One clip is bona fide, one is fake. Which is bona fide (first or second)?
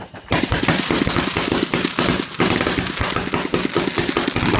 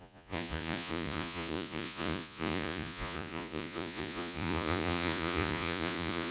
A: first